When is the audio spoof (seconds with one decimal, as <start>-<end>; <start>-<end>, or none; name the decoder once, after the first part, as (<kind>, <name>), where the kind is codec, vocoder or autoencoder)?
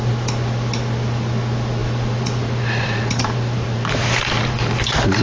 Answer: 1.8-4.7 (vocoder, BigVGAN v2)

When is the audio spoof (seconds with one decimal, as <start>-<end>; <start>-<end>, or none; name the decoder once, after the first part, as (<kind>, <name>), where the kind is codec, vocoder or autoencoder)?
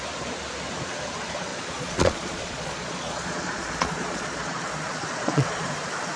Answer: 1.5-4.6 (vocoder, Vocos); 5.1-5.7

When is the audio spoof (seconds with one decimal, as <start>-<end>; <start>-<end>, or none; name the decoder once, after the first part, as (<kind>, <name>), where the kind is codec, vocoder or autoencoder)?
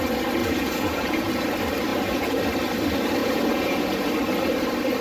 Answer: 0.4-1.3 (vocoder, Vocos); 1.9-2.4; 3.2-4.1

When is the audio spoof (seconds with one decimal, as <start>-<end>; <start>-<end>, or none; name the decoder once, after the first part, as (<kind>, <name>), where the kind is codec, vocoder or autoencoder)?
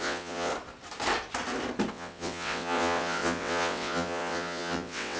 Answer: 0.0-0.5 (vocoder, WaveNeXt); 1.9-5.2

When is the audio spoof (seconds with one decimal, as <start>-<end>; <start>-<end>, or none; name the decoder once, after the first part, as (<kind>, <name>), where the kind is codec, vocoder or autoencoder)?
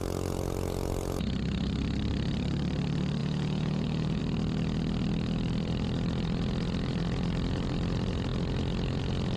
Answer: 3.2-4.2 (vocoder, Vocos)